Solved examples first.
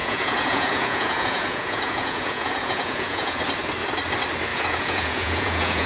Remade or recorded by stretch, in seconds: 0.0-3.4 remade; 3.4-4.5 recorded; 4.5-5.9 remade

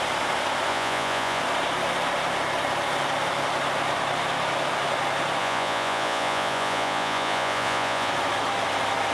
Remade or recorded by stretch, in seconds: 0.0-0.7 recorded; 0.7-1.4 remade; 1.4-5.4 recorded; 5.4-8.1 remade; 8.1-9.1 recorded